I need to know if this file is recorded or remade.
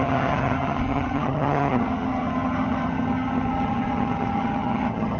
remade